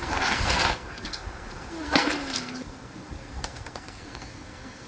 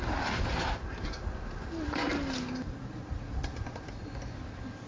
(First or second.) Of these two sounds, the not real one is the first